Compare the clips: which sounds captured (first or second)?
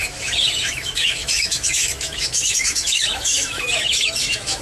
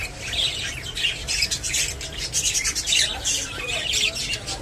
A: second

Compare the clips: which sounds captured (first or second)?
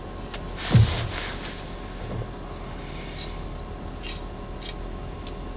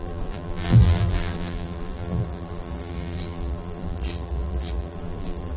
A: first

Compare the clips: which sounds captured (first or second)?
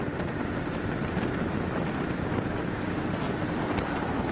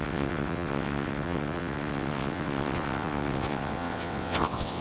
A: first